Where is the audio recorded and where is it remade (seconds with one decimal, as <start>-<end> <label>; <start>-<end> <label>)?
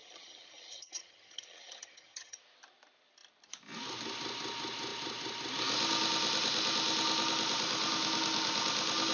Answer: 0.0-2.4 remade; 2.4-9.1 recorded